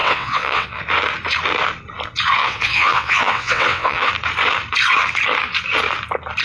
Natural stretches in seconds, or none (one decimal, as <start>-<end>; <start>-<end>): 0.8-2.4; 4.1-6.4